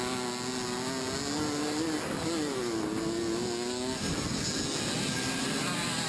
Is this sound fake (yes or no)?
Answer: no